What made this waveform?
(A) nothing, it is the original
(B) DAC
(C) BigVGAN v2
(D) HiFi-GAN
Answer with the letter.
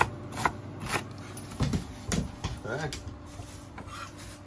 A